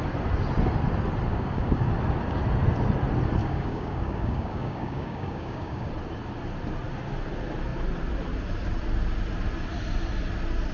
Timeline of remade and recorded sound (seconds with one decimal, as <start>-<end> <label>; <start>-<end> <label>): 0.0-1.3 recorded; 1.3-1.9 remade; 1.9-3.4 recorded; 3.4-5.9 remade; 5.9-10.7 recorded